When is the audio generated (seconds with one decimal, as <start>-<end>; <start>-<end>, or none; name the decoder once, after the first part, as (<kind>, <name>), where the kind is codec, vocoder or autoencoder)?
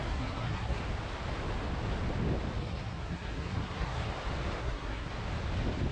0.0-0.8 (codec, SNAC); 2.6-4.1; 4.6-5.1